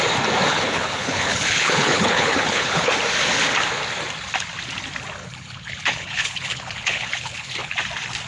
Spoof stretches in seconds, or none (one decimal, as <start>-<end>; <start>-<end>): 0.5-2.9; 5.2-7.7